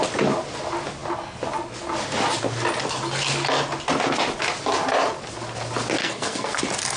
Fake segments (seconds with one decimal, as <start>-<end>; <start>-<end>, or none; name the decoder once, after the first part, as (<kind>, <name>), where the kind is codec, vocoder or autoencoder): 6.0-6.6 (codec, SNAC)